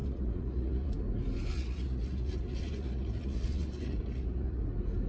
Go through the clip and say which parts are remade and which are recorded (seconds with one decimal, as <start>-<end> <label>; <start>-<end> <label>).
0.0-0.9 remade; 0.9-1.5 recorded; 1.5-4.6 remade; 4.6-5.1 recorded

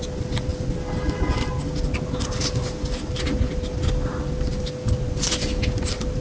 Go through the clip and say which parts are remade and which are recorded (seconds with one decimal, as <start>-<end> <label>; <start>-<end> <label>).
0.0-6.2 recorded

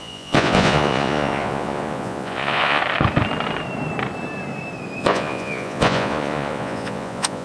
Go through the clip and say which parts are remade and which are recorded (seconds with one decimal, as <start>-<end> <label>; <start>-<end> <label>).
0.0-2.8 remade; 2.8-5.0 recorded; 5.0-7.4 remade

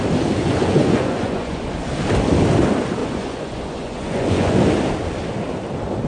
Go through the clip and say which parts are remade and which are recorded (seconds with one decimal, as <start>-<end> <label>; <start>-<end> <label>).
0.0-0.4 recorded; 0.4-1.6 remade; 1.6-3.0 recorded; 3.0-4.6 remade; 4.6-6.1 recorded

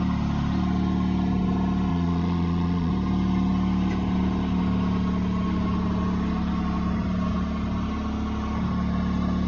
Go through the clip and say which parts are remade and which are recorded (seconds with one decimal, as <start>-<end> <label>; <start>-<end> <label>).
0.0-1.9 recorded; 1.9-2.9 remade; 2.9-9.5 recorded

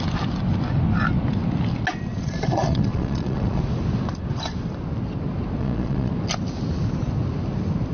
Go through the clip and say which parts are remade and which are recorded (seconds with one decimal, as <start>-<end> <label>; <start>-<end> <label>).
0.0-2.1 recorded; 2.1-3.6 remade; 3.6-5.6 recorded; 5.6-6.1 remade; 6.1-7.9 recorded